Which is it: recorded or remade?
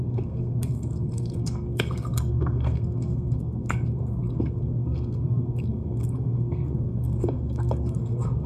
remade